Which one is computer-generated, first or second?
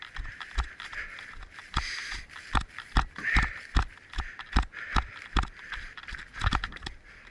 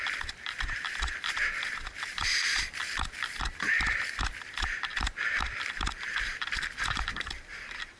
second